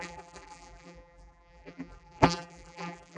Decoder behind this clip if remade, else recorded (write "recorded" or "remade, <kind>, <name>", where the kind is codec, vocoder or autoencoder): remade, vocoder, BigVGAN v2